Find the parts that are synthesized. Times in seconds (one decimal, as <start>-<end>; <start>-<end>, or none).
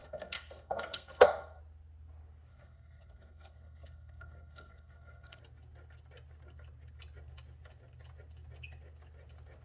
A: 0.0-1.6; 2.5-5.4